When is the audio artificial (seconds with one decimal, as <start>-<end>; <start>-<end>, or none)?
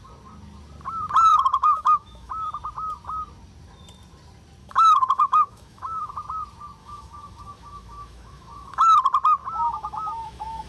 1.3-2.3; 4.6-6.1; 6.8-9.0; 9.4-10.7